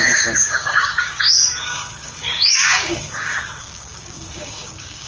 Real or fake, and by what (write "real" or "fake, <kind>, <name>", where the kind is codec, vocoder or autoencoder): fake, codec, DAC